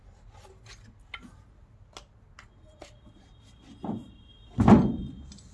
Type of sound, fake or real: real